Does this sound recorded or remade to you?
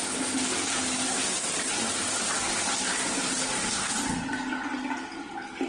recorded